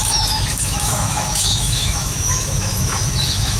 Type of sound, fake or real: fake